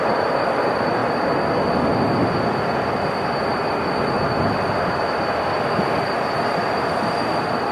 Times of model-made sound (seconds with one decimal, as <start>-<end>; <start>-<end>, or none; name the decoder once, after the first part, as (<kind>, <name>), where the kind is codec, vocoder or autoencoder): none